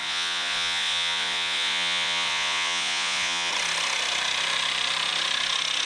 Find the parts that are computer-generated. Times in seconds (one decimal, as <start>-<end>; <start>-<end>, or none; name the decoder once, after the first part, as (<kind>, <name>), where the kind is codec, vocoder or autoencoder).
0.0-3.5 (vocoder, Vocos)